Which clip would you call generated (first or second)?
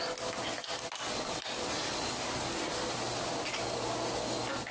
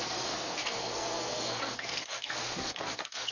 second